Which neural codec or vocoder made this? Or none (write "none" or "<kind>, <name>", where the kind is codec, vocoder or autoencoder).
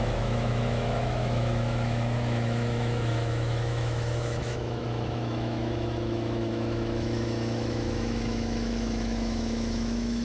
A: autoencoder, DAC-VAE